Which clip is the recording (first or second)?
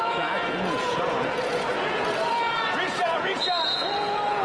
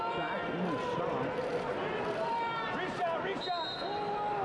second